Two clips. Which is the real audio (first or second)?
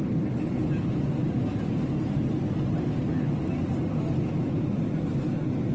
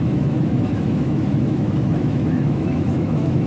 first